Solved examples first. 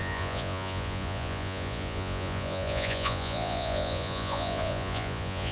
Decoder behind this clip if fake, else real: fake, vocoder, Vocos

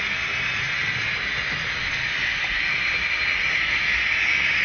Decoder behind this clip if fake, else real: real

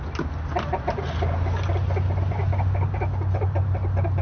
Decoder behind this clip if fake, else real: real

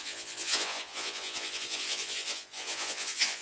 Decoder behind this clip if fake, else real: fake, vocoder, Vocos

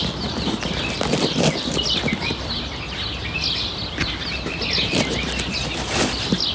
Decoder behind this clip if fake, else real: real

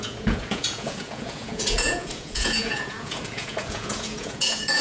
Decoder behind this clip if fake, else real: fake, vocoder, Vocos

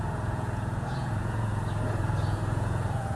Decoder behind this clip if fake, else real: fake, vocoder, Vocos